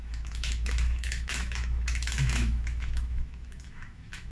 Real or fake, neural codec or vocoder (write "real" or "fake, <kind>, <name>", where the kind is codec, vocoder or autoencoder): fake, autoencoder, DAC-VAE